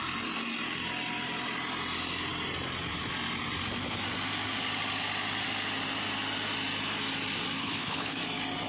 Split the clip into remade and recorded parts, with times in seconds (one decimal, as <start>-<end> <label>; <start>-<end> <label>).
0.0-7.6 recorded; 7.6-8.2 remade; 8.2-8.7 recorded